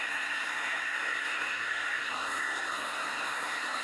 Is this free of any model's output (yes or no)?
no